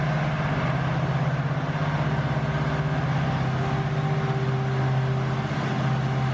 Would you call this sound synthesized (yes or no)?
no